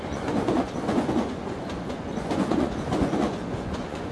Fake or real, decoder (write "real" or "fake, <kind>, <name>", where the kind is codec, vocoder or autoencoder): fake, vocoder, Vocos